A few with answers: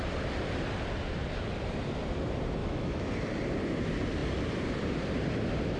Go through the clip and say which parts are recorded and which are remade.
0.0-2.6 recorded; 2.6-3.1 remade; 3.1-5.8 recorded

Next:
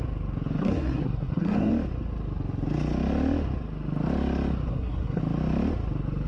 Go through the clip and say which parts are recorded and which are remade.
0.0-0.6 recorded; 0.6-1.7 remade; 1.7-4.7 recorded; 4.7-5.2 remade; 5.2-6.3 recorded

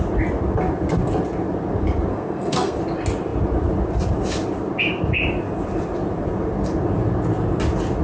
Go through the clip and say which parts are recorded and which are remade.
0.0-2.1 recorded; 2.1-2.8 remade; 2.8-8.0 recorded

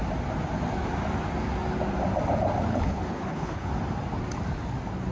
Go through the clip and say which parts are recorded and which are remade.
0.0-2.7 recorded; 2.7-3.7 remade; 3.7-5.1 recorded

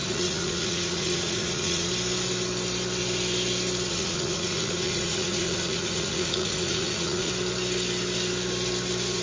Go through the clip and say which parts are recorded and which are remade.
0.0-1.9 remade; 1.9-3.9 recorded; 3.9-7.3 remade; 7.3-9.2 recorded